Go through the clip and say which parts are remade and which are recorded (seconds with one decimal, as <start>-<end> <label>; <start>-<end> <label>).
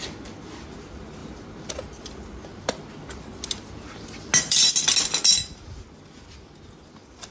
0.0-7.3 recorded